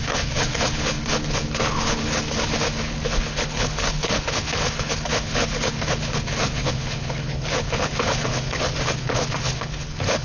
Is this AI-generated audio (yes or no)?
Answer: yes